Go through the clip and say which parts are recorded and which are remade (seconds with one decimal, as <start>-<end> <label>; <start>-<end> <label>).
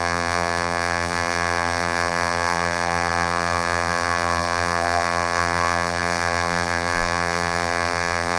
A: 0.0-8.4 remade